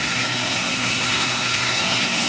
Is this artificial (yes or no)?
yes